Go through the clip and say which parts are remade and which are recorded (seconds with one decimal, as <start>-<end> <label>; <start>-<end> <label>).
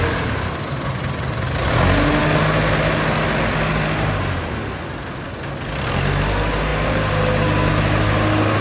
0.0-8.6 recorded